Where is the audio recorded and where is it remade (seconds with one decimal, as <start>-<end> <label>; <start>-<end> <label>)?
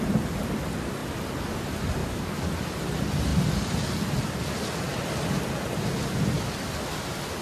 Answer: 0.0-2.0 recorded; 2.0-2.5 remade; 2.5-7.4 recorded